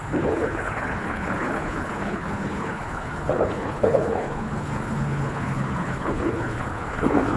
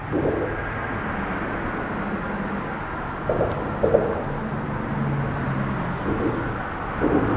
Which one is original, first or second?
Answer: second